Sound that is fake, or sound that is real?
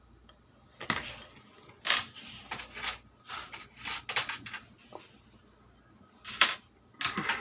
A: real